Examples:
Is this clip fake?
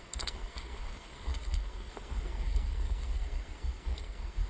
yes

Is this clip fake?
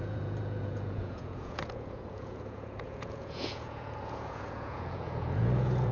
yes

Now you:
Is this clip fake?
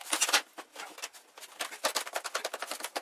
no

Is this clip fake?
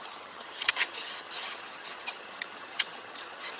yes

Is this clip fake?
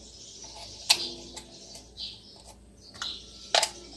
no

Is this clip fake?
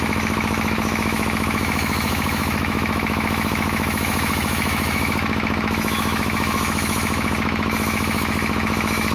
yes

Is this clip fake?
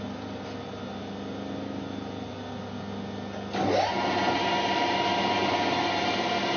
no